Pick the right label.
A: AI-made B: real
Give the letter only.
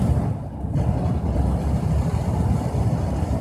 B